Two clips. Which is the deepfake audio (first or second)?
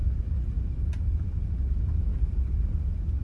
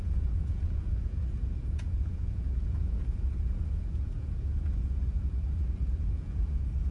second